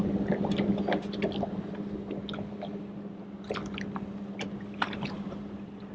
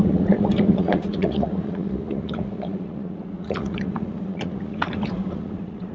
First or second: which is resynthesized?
second